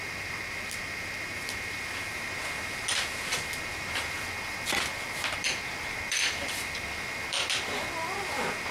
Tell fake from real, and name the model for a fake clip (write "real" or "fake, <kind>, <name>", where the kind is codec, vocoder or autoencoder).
fake, vocoder, BigVGAN v2